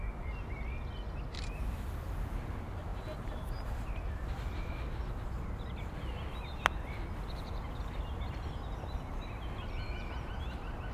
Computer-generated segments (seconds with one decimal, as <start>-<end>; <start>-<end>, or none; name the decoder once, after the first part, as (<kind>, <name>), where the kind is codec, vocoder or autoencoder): 2.9-4.7 (vocoder, BigVGAN v2)